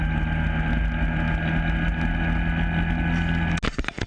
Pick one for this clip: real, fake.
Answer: real